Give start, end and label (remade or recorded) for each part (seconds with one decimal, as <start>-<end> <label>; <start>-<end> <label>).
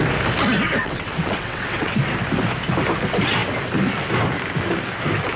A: 0.0-0.8 recorded; 0.8-2.0 remade; 2.0-5.4 recorded